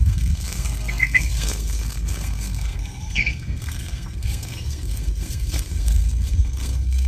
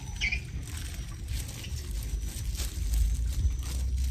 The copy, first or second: first